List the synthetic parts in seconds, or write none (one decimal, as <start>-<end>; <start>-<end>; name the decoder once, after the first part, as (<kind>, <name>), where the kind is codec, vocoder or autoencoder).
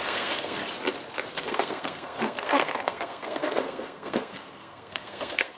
0.0-0.6 (codec, SNAC); 1.3-5.6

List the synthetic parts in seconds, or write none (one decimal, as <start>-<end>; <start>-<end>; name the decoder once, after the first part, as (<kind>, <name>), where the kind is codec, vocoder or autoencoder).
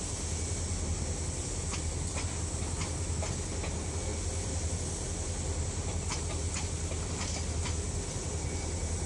4.1-4.7 (vocoder, BigVGAN v2)